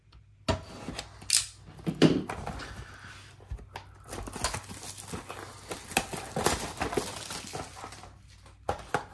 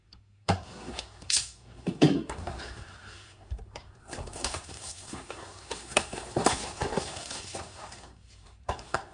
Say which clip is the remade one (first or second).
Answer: second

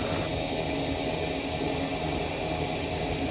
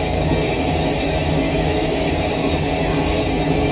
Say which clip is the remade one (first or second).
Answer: second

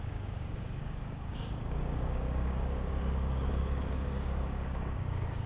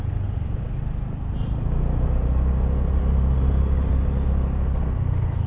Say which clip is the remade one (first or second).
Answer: first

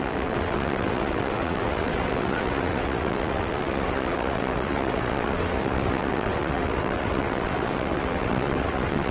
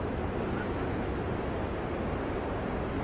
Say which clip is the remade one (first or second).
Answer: first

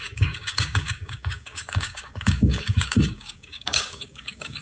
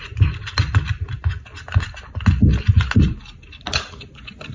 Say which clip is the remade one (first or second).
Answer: first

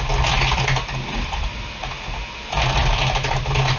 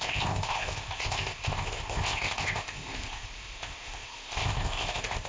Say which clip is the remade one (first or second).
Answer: second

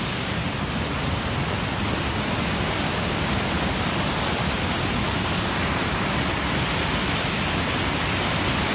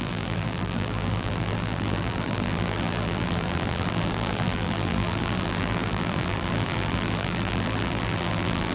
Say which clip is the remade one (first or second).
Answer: second